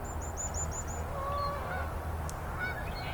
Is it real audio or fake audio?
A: real